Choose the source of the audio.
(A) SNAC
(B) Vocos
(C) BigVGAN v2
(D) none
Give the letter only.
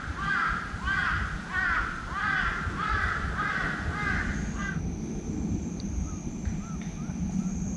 D